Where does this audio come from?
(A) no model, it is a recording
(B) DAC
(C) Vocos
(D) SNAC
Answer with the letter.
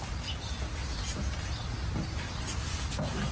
A